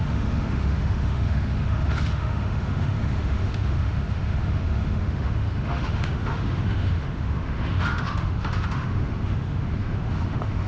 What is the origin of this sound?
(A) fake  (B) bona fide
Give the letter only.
A